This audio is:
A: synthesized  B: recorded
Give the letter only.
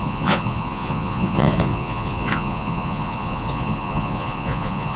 A